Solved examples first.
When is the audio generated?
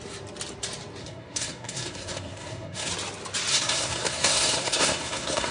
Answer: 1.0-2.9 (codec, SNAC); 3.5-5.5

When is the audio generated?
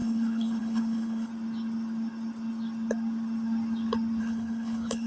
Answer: 0.0-1.3 (codec, HILCodec); 4.2-5.1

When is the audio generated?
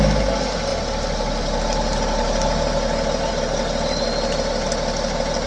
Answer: none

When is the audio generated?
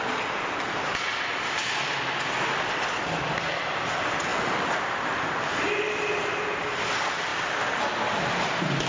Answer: none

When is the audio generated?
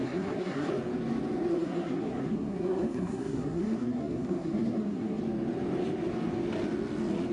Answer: 0.0-0.7 (codec, SNAC); 1.5-5.2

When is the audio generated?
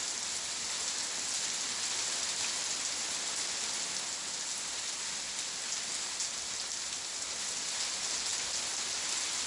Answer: none